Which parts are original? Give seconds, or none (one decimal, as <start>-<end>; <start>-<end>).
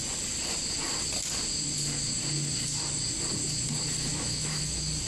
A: 0.0-4.1; 4.6-5.1